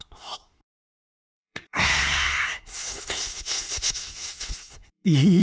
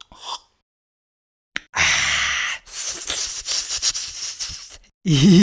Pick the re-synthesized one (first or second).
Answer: first